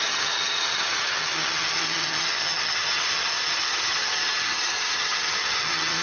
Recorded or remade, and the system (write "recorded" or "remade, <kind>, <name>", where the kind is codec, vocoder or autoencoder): remade, vocoder, HiFi-GAN